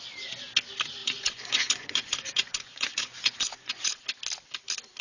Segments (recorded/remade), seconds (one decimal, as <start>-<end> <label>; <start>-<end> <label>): 0.0-1.0 recorded; 1.0-4.0 remade; 4.0-5.0 recorded